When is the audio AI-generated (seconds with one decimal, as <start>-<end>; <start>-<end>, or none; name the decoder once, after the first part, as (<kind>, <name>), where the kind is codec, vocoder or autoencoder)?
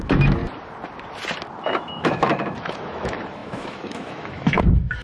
0.0-0.4 (autoencoder, DAC-VAE); 1.6-5.0